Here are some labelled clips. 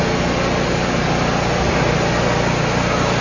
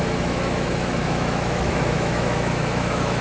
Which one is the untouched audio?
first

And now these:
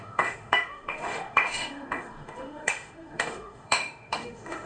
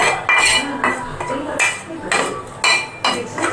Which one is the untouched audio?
second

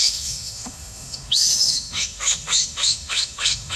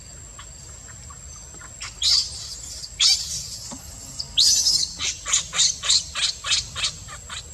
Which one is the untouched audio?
second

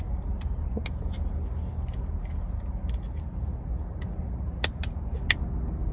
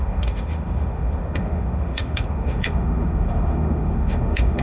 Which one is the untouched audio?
first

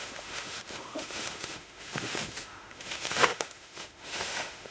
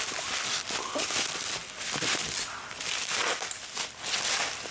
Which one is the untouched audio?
second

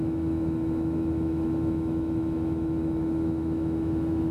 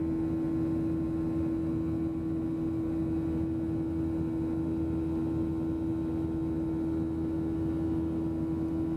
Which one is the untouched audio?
second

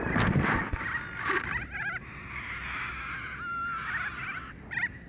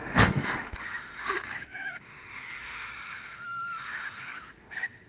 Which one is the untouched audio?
first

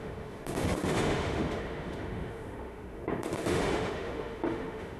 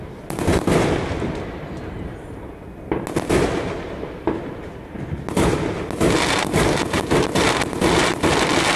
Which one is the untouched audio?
second